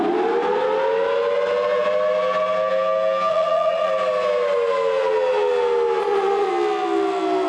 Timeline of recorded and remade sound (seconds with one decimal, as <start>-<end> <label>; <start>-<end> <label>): 0.0-3.3 recorded; 3.3-3.9 remade; 3.9-6.0 recorded; 6.0-6.5 remade; 6.5-7.5 recorded